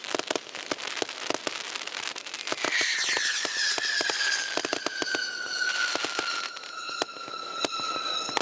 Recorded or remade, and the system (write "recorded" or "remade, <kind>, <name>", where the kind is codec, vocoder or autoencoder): recorded